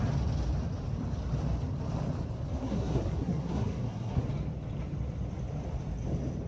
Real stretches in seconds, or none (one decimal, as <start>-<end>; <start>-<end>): 0.0-2.6; 4.2-6.5